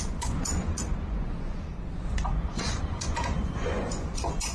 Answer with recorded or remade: remade